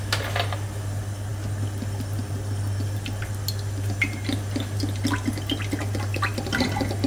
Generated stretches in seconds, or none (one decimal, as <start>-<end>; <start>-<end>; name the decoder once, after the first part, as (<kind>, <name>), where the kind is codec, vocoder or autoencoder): none